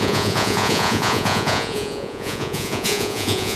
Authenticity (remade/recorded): remade